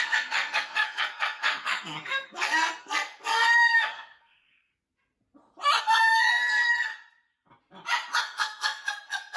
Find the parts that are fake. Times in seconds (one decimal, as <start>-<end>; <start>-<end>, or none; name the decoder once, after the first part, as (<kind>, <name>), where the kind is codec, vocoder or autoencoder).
0.0-4.7 (codec, SNAC); 5.8-6.9; 8.2-9.4